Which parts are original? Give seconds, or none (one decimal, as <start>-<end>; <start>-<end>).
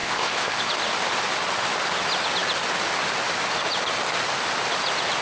0.7-5.2